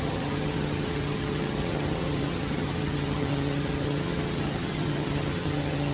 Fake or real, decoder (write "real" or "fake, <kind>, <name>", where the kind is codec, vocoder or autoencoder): fake, vocoder, HiFi-GAN